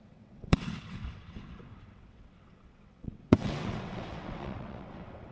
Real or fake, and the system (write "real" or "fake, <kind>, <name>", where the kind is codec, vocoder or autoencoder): fake, vocoder, WaveNeXt